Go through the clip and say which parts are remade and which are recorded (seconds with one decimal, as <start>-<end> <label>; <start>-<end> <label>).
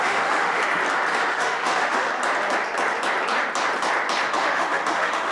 0.0-0.6 remade; 0.6-1.1 recorded; 1.1-2.1 remade; 2.1-4.3 recorded; 4.3-5.3 remade